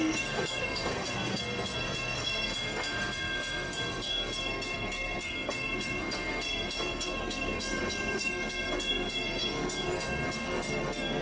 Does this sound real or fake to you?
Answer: fake